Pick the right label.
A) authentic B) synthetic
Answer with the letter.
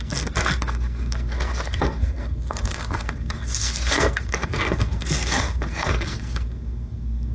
B